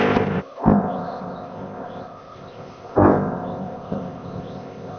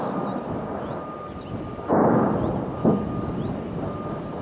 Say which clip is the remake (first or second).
first